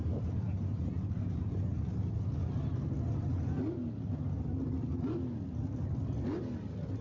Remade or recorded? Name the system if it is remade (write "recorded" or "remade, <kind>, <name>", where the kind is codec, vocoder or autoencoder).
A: recorded